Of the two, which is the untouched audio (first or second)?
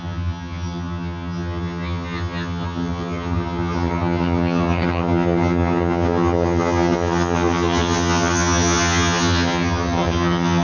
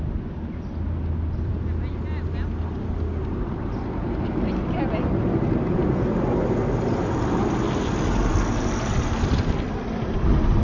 second